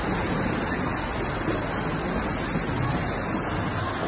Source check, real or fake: real